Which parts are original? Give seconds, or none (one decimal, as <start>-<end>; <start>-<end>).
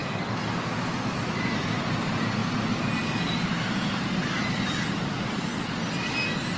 2.4-3.2; 5.5-6.6